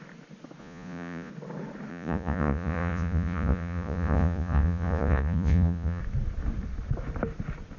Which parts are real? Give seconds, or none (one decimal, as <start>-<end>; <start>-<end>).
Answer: 0.0-0.6; 1.3-1.9; 6.0-7.8